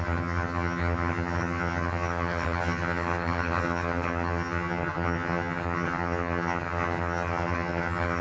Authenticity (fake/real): fake